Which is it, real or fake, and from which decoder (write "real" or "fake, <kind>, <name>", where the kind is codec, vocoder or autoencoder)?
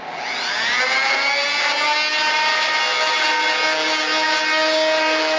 real